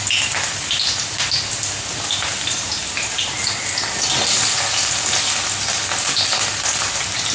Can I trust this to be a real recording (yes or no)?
yes